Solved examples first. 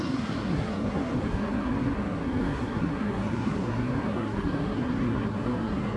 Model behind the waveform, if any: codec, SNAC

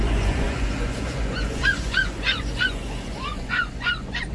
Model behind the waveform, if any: vocoder, Vocos